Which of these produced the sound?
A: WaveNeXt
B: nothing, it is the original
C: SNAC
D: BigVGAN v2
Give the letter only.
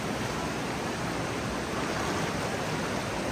B